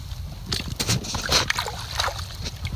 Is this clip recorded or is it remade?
recorded